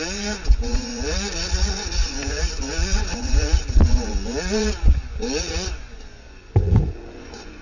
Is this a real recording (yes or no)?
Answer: no